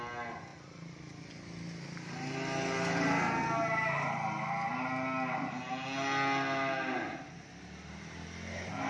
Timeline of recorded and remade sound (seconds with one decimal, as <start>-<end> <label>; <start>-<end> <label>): 0.0-8.9 recorded